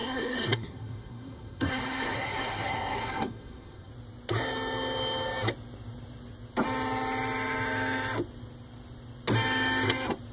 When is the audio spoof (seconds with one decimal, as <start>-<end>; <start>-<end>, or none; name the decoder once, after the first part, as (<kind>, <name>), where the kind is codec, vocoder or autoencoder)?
0.0-3.9 (codec, SNAC)